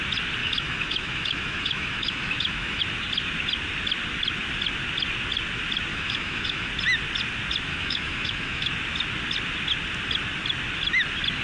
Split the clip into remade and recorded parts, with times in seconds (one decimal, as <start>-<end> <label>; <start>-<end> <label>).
0.0-0.4 recorded; 0.4-2.8 remade; 2.8-5.9 recorded; 5.9-6.7 remade; 6.7-7.7 recorded; 7.7-8.7 remade; 8.7-11.4 recorded